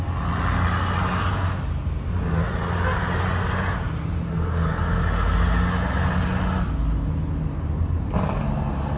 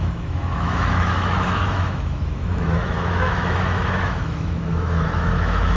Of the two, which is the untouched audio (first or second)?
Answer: first